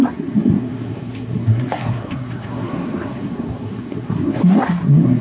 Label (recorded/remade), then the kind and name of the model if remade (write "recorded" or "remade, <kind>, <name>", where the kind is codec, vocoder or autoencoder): remade, codec, SNAC